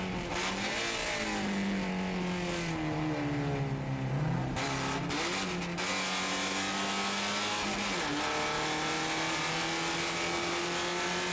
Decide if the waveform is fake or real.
real